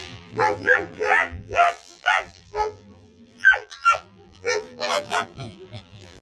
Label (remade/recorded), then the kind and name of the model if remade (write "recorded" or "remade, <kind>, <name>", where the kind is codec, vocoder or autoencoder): remade, vocoder, BigVGAN v2